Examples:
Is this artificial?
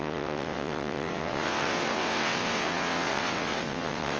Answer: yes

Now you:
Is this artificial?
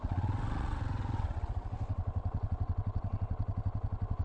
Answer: yes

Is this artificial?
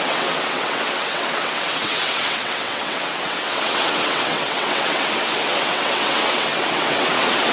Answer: yes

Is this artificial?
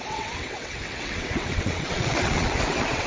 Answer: yes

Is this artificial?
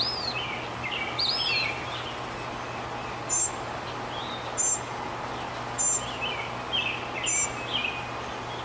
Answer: no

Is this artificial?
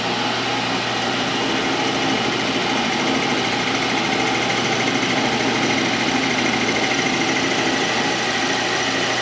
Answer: no